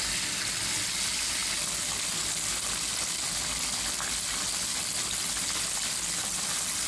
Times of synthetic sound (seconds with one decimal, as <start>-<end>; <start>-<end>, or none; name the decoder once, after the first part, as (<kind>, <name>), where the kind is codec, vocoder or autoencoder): none